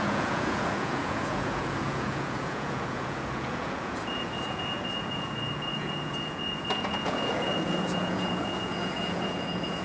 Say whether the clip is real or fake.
fake